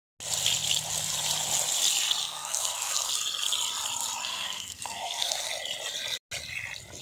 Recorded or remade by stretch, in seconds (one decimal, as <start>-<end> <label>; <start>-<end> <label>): 0.0-2.2 recorded; 2.2-3.1 remade; 3.1-4.3 recorded; 4.3-5.5 remade; 5.5-7.0 recorded